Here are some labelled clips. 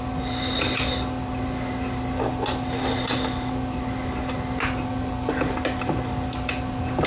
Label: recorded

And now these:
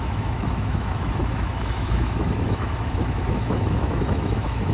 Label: remade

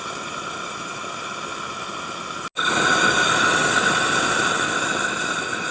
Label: recorded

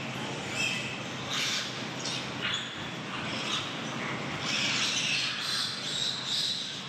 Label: recorded